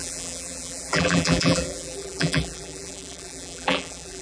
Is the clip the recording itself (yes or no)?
no